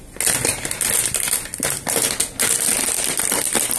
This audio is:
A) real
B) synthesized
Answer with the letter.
A